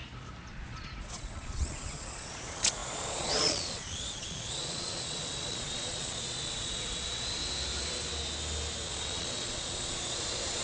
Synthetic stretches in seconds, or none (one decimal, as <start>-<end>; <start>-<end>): 0.5-7.4; 8.9-10.6